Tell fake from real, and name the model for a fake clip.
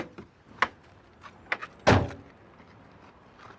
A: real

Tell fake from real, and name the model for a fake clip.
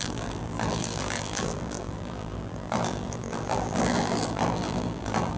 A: fake, vocoder, BigVGAN v2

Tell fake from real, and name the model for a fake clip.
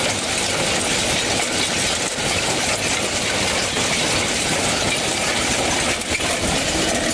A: real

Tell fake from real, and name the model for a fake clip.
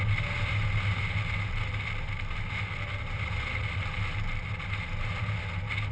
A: real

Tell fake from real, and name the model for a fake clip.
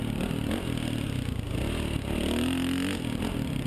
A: real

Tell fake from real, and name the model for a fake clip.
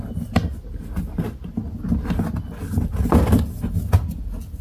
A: real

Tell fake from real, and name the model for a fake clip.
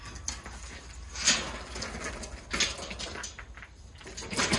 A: real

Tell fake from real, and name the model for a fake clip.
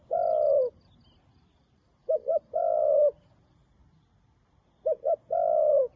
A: real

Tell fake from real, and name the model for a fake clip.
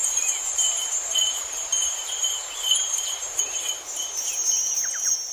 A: fake, vocoder, BigVGAN v2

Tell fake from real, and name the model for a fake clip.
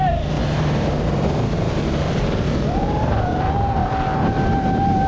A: fake, vocoder, BigVGAN v2